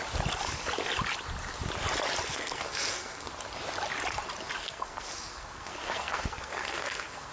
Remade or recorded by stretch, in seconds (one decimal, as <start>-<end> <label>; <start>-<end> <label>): 0.0-2.3 recorded; 2.3-3.3 remade; 3.3-4.6 recorded; 4.6-7.3 remade